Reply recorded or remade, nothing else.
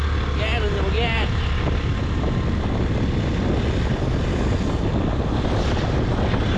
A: recorded